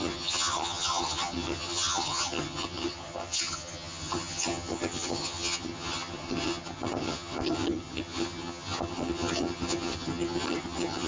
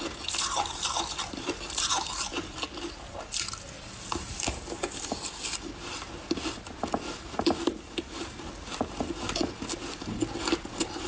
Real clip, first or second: second